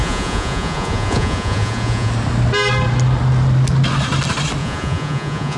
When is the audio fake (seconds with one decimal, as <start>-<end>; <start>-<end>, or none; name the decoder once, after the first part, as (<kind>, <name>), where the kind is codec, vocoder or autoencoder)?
0.0-2.1 (vocoder, Vocos); 4.6-5.6

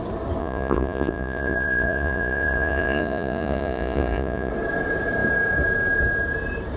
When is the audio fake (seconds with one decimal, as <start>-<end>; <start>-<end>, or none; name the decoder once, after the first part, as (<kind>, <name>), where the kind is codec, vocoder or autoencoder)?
0.4-4.5 (vocoder, Vocos)